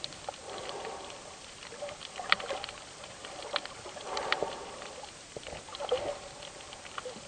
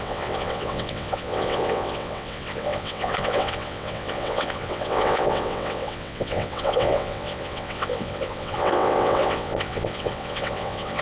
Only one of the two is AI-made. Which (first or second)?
second